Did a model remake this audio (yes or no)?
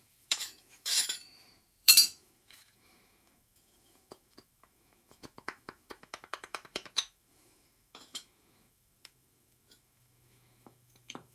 yes